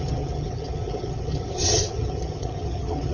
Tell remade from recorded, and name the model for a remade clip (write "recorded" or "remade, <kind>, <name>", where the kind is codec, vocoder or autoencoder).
remade, vocoder, HiFi-GAN